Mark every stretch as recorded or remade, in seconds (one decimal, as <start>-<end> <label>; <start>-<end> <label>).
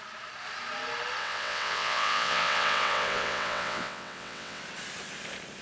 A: 0.0-1.2 recorded; 1.2-4.6 remade; 4.6-5.6 recorded